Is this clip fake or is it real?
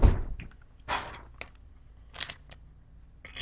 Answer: real